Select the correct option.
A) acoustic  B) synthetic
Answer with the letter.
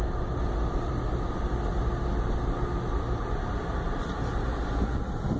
A